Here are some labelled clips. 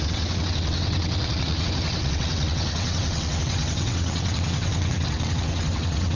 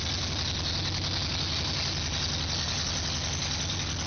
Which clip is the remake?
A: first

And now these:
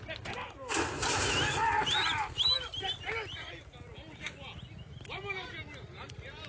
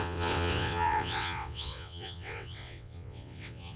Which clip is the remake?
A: second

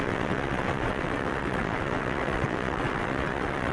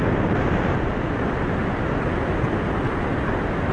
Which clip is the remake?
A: first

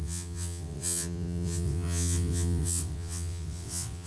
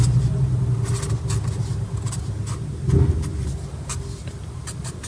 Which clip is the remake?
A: first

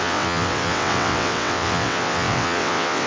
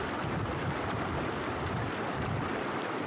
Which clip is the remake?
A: first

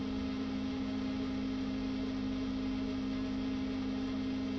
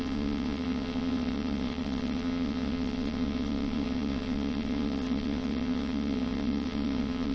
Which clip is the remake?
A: second